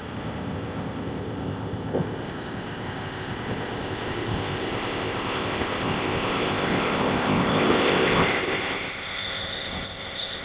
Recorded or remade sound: remade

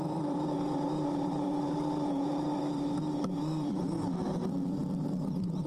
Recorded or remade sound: remade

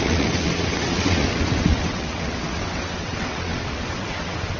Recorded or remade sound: remade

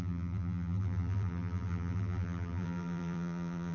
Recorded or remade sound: remade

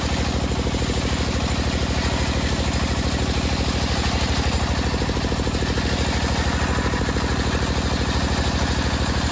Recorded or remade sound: recorded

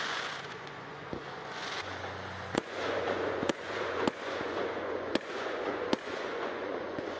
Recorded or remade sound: remade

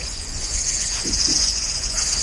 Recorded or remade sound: remade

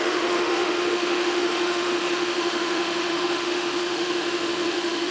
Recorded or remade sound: remade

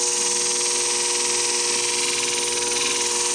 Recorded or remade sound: recorded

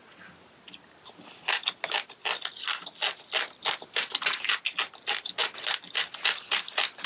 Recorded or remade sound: recorded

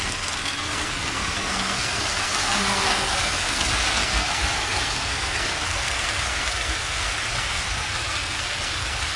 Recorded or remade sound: remade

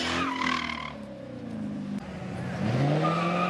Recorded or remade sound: recorded